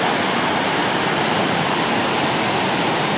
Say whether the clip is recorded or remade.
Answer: recorded